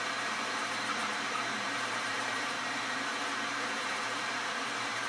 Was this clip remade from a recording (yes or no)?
yes